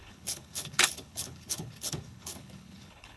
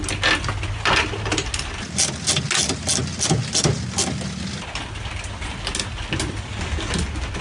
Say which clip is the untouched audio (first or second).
second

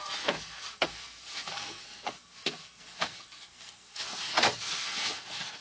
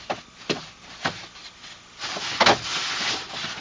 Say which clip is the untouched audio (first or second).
second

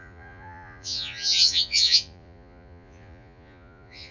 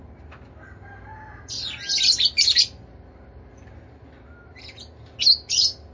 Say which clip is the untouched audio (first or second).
second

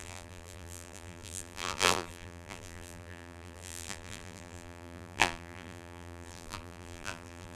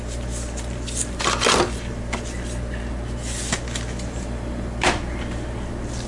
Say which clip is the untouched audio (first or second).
second